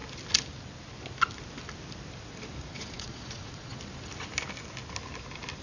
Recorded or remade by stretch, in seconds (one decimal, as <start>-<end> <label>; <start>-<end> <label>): 0.0-2.7 recorded; 2.7-3.8 remade; 3.8-5.6 recorded